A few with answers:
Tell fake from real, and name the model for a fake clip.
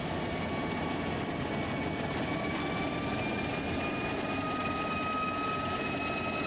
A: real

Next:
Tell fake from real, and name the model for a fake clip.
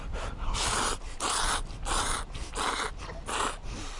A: real